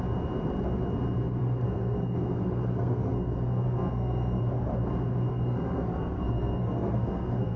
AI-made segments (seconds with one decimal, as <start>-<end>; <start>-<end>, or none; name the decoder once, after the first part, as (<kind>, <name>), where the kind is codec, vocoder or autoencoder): 1.4-4.4 (codec, SNAC); 5.3-7.6